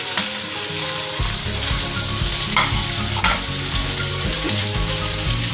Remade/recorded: recorded